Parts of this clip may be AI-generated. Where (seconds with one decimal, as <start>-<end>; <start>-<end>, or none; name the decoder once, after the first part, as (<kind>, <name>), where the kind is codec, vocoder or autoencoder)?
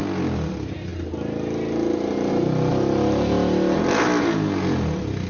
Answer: none